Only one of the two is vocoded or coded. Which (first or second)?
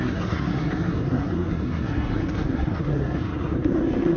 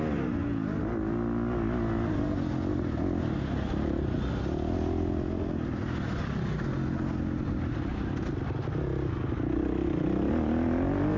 first